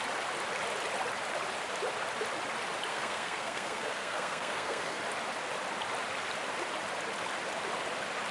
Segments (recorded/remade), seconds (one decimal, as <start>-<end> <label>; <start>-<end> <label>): 0.0-2.9 recorded; 2.9-5.0 remade; 5.0-8.3 recorded